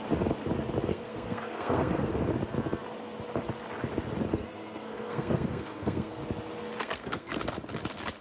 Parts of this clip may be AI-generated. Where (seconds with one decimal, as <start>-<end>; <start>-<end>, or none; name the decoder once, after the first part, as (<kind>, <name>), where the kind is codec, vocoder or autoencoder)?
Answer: 0.9-2.1 (codec, SNAC); 4.3-6.2; 6.8-7.4